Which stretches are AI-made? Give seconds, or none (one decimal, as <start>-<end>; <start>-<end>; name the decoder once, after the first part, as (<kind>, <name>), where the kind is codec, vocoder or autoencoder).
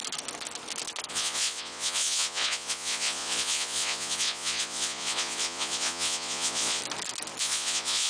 1.1-6.8 (vocoder, Vocos); 7.4-8.1